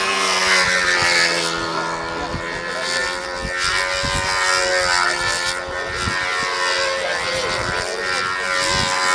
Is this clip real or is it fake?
real